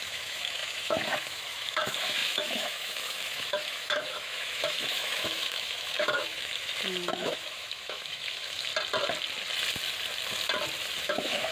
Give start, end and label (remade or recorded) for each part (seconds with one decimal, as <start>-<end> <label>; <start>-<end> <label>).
0.0-8.7 remade; 8.7-11.0 recorded; 11.0-11.5 remade